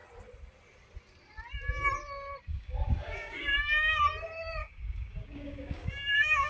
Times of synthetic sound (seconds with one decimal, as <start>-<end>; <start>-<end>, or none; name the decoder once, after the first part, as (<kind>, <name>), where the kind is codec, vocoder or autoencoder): 2.5-4.0 (codec, DAC); 4.6-6.5